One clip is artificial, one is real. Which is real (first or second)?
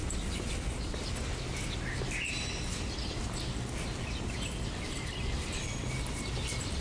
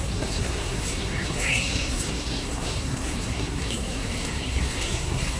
first